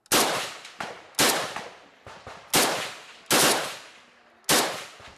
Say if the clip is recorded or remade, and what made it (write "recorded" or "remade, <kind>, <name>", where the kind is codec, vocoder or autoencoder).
recorded